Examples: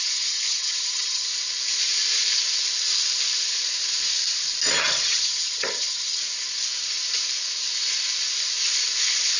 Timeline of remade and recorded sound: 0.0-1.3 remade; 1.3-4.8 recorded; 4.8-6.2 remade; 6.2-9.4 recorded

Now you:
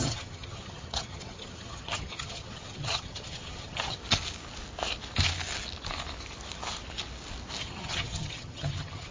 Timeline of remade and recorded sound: 0.0-4.0 remade; 4.0-7.6 recorded; 7.6-9.1 remade

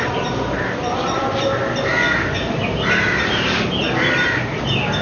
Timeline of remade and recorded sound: 0.0-5.0 recorded

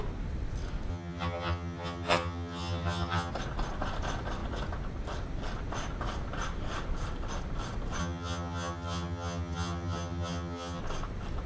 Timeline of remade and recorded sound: 0.0-0.9 recorded; 0.9-3.3 remade; 3.3-8.0 recorded; 8.0-10.8 remade; 10.8-11.5 recorded

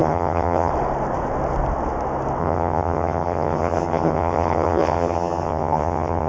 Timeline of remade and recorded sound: 0.0-0.7 remade; 0.7-2.4 recorded; 2.4-6.3 remade